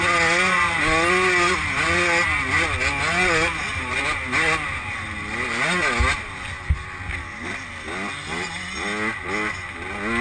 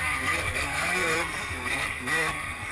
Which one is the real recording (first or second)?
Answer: first